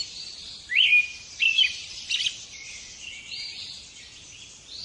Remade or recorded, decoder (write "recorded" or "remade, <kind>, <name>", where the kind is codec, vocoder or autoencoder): recorded